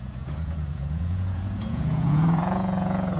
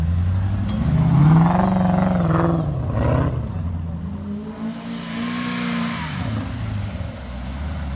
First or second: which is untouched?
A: second